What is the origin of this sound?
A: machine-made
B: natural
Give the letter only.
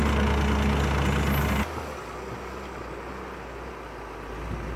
B